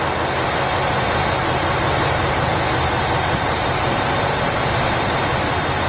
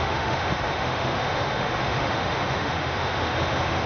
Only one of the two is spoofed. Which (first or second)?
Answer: second